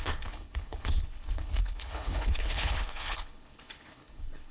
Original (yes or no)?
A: no